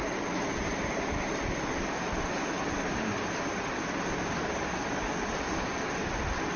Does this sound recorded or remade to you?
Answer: recorded